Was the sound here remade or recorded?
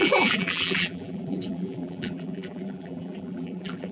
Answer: remade